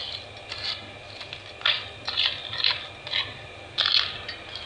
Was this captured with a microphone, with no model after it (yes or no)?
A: yes